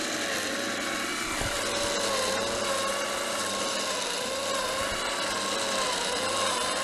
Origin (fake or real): real